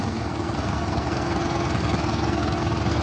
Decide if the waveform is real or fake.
fake